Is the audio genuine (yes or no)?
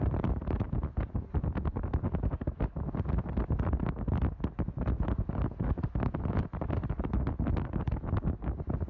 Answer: yes